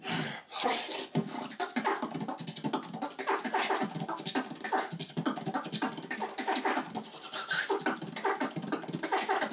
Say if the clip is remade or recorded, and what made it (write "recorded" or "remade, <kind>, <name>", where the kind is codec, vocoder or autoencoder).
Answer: recorded